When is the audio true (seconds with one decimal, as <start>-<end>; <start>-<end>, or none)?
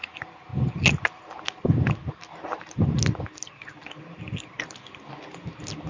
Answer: 0.0-5.9